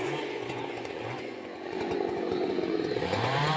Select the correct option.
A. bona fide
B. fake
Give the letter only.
B